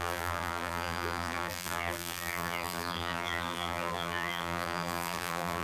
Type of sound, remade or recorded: remade